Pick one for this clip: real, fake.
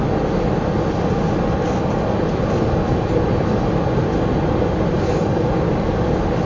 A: real